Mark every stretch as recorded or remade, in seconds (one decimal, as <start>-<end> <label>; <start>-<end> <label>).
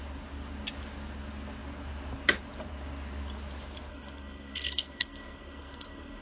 0.0-3.9 recorded; 3.9-6.2 remade